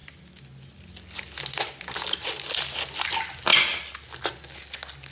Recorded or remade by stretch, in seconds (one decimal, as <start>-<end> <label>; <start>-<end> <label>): 0.0-5.1 recorded